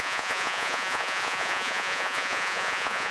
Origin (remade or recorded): remade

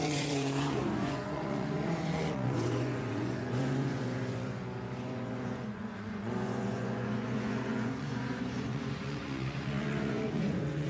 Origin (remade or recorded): remade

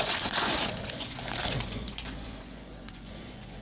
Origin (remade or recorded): remade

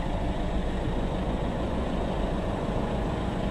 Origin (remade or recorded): remade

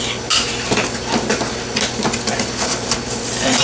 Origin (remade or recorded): recorded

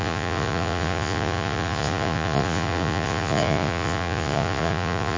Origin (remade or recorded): remade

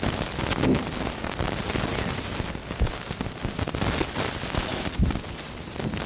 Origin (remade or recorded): recorded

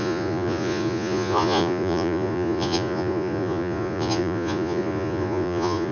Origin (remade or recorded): remade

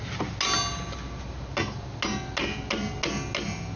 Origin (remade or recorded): recorded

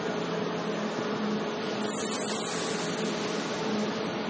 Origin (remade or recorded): recorded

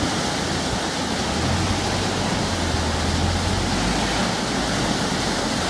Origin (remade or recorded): recorded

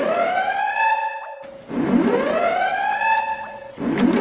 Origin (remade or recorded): recorded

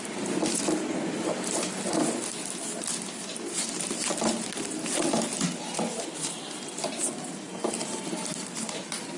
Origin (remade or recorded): recorded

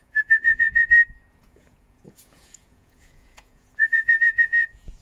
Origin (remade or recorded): remade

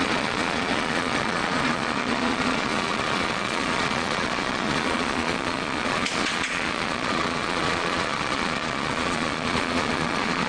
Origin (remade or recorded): remade